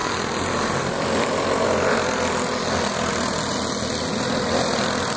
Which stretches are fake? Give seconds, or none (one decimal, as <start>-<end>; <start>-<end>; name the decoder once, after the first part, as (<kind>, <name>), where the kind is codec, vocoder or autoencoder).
none